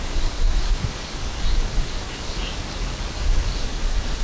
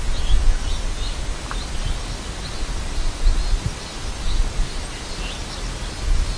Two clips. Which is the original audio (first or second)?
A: second